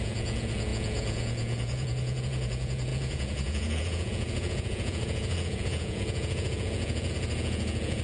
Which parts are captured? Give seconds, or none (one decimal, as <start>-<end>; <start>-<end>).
none